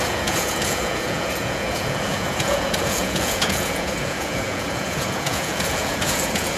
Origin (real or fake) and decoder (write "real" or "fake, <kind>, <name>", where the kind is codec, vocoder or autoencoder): fake, vocoder, Vocos